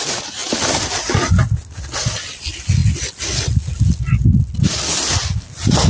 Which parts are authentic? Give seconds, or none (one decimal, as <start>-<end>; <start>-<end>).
0.0-5.9